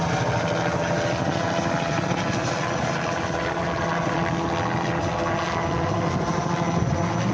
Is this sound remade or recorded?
recorded